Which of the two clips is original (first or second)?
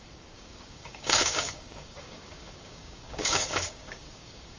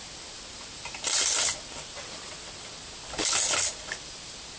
second